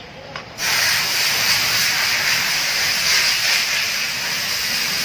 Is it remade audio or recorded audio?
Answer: remade